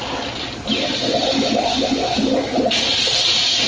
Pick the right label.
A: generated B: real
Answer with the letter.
B